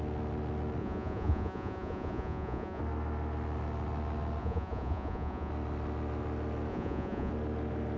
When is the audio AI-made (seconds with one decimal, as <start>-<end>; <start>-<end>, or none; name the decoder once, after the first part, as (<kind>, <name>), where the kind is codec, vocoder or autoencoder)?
0.8-2.8 (vocoder, Vocos); 4.4-5.5; 6.7-7.3